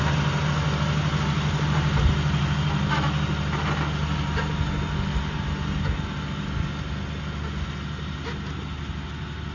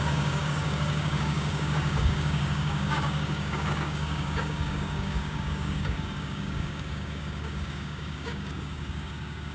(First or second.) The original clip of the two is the first